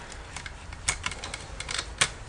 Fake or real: real